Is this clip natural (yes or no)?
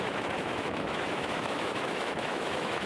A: no